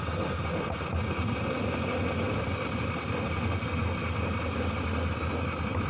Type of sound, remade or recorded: recorded